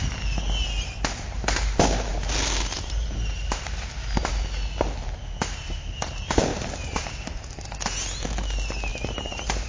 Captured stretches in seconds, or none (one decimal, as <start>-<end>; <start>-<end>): 0.0-2.1; 4.3-6.5; 7.8-8.9